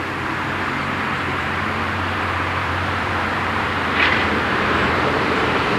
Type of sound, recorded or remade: remade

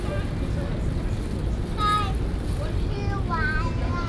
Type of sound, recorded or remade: recorded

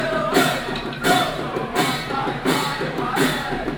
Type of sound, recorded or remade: remade